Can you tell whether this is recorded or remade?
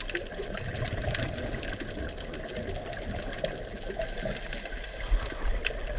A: recorded